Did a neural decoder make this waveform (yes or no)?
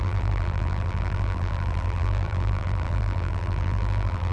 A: yes